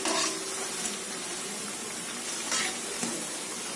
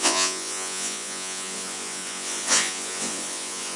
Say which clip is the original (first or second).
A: first